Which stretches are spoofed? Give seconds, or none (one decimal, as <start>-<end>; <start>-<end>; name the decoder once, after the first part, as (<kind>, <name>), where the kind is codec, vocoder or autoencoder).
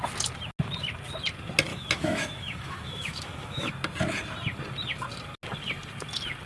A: 1.7-3.7 (autoencoder, DAC-VAE)